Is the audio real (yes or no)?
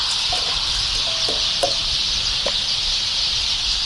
no